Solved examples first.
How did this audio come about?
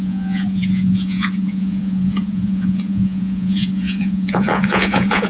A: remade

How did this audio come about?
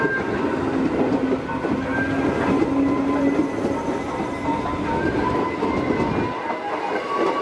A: recorded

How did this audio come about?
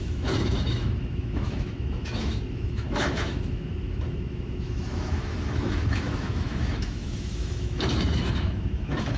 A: remade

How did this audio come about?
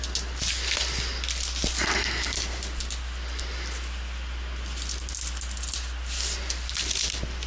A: recorded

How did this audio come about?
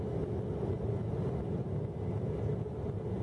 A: recorded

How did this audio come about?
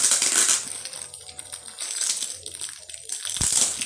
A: recorded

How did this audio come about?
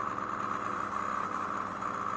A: recorded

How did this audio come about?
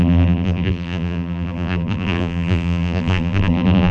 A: remade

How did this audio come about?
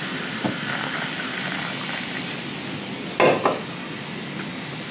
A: recorded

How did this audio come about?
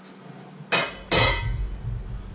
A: recorded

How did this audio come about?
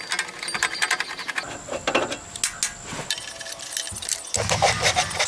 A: recorded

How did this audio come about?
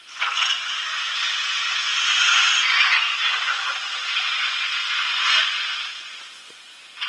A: remade